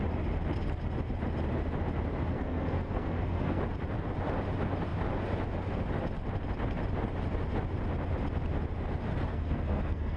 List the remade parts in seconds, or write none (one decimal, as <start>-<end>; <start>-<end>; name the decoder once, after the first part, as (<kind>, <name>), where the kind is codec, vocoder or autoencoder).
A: 2.3-3.6 (codec, SNAC); 9.3-10.2